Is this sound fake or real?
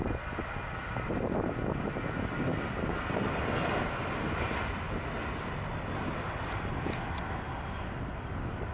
real